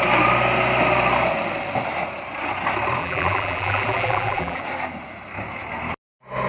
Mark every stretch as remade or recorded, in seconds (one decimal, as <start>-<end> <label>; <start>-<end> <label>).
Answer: 0.0-3.0 recorded; 3.0-4.6 remade; 4.6-6.5 recorded